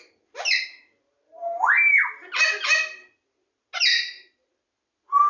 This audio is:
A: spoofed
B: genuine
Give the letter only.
B